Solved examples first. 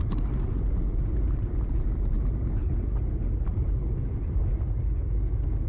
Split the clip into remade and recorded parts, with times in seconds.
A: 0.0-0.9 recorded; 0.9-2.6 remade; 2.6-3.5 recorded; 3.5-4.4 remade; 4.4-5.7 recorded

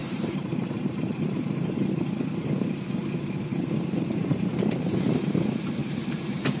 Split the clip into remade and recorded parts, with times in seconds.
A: 0.0-1.9 remade; 1.9-3.5 recorded; 3.5-5.3 remade; 5.3-5.8 recorded; 5.8-6.6 remade

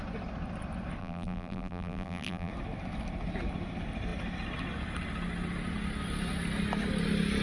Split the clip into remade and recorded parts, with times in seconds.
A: 0.0-1.0 recorded; 1.0-2.5 remade; 2.5-7.4 recorded

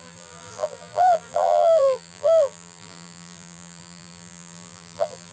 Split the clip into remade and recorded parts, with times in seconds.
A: 0.0-5.3 remade

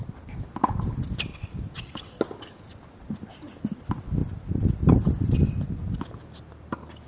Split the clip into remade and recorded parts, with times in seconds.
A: 0.0-1.3 recorded; 1.3-2.0 remade; 2.0-7.1 recorded

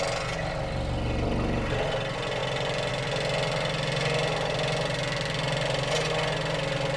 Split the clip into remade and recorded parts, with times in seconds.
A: 0.0-7.0 recorded